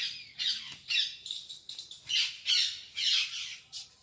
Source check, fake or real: real